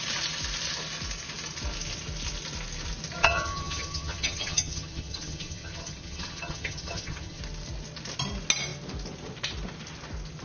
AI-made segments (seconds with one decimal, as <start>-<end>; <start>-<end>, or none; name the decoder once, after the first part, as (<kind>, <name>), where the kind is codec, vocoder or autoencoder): 3.2-7.4 (vocoder, HiFi-GAN)